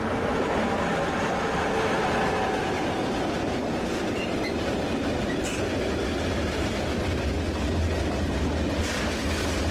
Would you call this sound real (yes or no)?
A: yes